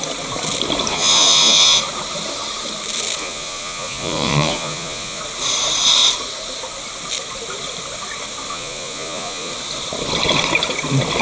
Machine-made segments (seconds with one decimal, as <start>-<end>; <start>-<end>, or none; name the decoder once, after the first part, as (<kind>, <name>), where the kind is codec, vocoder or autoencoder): 0.9-1.8 (vocoder, Vocos); 3.2-5.2; 8.5-9.5